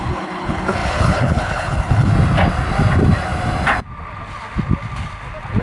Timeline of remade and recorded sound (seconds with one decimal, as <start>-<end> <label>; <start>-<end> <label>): 0.0-2.1 remade; 2.1-5.6 recorded